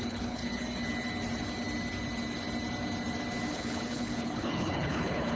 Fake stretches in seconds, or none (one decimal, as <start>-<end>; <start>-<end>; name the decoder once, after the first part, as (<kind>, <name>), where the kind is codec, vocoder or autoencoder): 0.0-0.4 (codec, HILCodec); 3.5-5.4

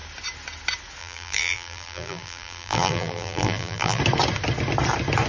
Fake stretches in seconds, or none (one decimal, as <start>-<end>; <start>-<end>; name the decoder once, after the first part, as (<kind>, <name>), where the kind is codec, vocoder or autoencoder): 1.0-4.0 (vocoder, BigVGAN v2)

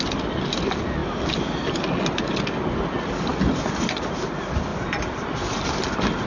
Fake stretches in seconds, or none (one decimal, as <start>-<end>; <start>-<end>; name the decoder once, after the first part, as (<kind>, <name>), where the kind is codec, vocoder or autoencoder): none

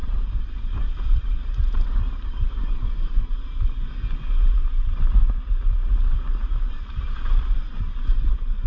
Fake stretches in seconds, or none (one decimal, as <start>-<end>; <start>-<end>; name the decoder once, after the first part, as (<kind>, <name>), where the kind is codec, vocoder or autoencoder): 0.0-3.2 (vocoder, BigVGAN v2); 6.4-7.4

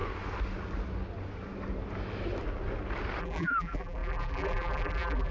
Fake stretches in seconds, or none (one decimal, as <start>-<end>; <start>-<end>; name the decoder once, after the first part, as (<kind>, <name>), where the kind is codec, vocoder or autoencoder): 3.2-5.3 (vocoder, BigVGAN v2)

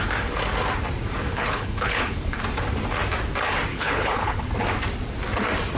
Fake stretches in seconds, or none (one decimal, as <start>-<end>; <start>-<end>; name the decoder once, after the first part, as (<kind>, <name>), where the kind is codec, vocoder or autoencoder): 1.3-2.4 (codec, HILCodec); 3.7-4.5